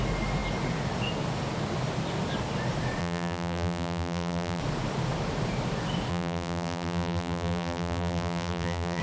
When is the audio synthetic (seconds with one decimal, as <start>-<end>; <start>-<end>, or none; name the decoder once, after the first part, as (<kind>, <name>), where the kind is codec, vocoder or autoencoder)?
3.0-4.6 (vocoder, BigVGAN v2); 6.1-9.0

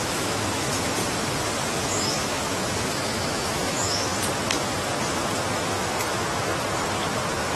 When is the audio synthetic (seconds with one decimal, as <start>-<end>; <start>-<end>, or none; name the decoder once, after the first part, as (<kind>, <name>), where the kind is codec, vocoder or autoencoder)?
0.0-1.0 (autoencoder, DAC-VAE); 1.8-4.1; 5.5-6.5

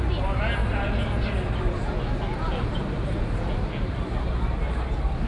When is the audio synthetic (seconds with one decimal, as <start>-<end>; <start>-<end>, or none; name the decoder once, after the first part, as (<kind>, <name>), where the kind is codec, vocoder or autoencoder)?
none